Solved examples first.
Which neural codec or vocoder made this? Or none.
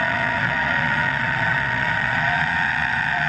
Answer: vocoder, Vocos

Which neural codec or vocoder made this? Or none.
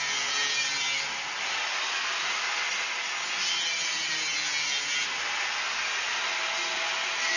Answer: none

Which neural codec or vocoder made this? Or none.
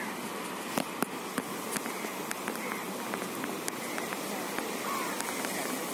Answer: none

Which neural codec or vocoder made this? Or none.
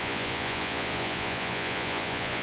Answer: vocoder, Vocos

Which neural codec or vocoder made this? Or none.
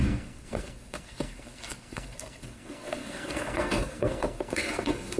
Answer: codec, SNAC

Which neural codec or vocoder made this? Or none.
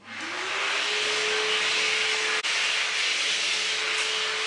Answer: none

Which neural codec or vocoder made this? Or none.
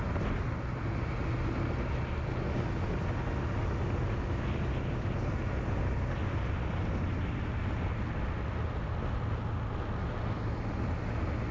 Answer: none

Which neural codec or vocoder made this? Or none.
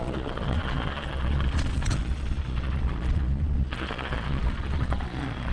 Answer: vocoder, Vocos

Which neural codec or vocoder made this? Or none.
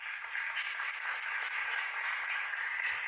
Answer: none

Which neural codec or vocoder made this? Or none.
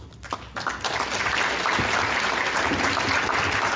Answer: none